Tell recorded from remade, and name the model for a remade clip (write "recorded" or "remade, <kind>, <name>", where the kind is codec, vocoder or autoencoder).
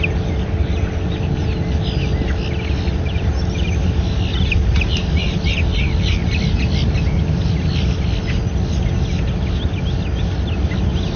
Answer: recorded